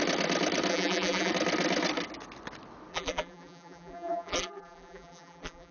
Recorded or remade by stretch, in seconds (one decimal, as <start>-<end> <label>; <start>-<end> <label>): 0.0-0.7 recorded; 0.7-1.3 remade; 1.3-2.9 recorded; 2.9-5.7 remade